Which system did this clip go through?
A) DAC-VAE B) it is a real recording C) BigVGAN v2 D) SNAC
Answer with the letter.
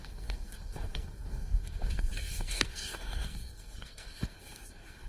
D